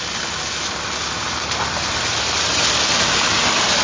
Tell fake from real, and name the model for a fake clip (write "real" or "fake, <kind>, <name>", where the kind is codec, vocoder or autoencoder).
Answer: real